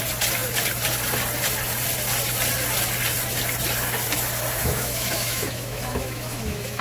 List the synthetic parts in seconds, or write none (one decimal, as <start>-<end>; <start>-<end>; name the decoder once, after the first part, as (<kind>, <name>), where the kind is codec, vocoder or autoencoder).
4.6-6.8 (autoencoder, DAC-VAE)